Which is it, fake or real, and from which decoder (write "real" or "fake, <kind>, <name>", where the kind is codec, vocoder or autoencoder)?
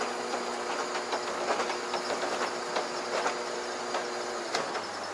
real